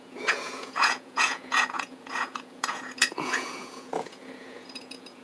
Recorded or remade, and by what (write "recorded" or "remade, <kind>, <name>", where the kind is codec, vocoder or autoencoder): remade, vocoder, Vocos